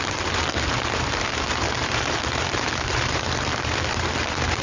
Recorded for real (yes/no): no